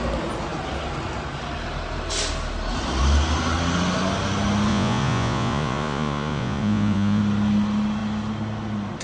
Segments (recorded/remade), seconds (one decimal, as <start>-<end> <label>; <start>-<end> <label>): 0.0-4.7 recorded; 4.7-7.2 remade; 7.2-9.0 recorded